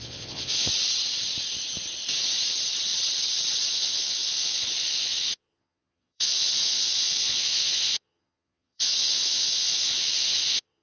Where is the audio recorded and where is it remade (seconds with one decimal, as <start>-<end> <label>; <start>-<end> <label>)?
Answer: 0.0-0.7 remade; 0.7-3.7 recorded; 3.7-10.8 remade